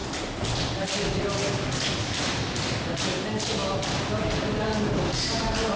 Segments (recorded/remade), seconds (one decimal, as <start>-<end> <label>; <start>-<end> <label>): 0.0-5.8 recorded